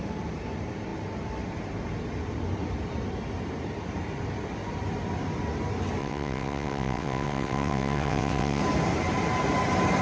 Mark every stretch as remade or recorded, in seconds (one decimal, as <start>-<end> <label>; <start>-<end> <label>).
0.0-6.0 recorded; 6.0-8.6 remade; 8.6-10.0 recorded